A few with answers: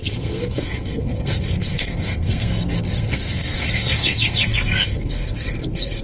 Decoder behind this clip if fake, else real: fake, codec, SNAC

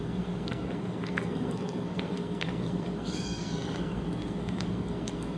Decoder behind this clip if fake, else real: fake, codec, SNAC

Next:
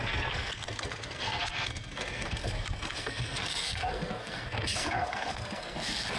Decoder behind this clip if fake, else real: fake, codec, SNAC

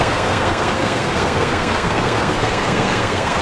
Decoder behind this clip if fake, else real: fake, codec, SNAC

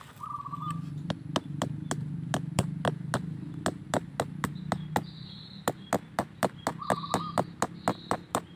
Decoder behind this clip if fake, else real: real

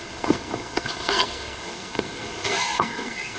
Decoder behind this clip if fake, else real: fake, codec, SNAC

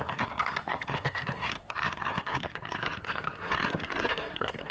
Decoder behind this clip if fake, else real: fake, codec, SNAC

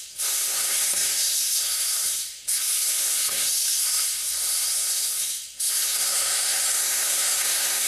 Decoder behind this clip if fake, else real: fake, codec, SNAC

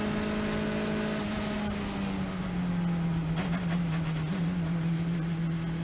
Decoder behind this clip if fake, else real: real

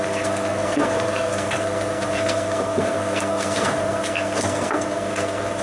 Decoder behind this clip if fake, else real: fake, codec, SNAC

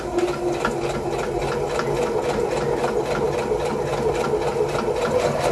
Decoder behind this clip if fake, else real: real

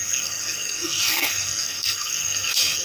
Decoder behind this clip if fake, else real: fake, codec, SNAC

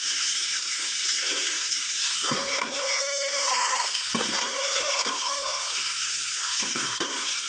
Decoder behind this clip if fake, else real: fake, codec, SNAC